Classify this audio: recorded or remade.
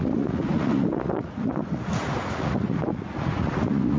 remade